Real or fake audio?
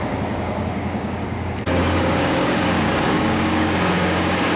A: fake